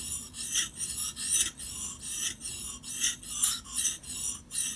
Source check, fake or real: real